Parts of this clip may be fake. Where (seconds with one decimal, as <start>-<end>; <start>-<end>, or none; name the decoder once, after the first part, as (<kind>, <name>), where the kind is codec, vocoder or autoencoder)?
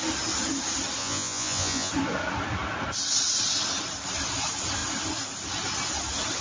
1.0-1.9 (vocoder, Vocos)